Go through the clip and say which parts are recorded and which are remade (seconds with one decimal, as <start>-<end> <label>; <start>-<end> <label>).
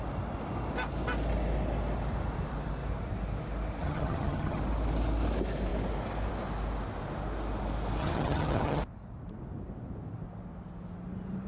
0.0-3.8 recorded; 3.8-4.6 remade; 4.6-8.0 recorded; 8.0-8.8 remade; 8.8-11.5 recorded